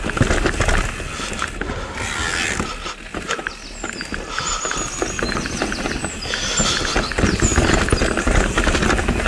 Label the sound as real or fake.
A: real